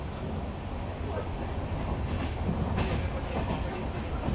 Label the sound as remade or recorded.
recorded